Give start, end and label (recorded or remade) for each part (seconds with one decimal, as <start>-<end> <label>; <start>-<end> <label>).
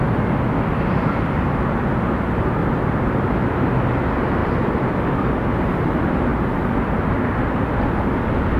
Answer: 0.0-2.6 recorded; 2.6-3.5 remade; 3.5-4.4 recorded; 4.4-5.4 remade; 5.4-6.3 recorded; 6.3-7.3 remade; 7.3-8.6 recorded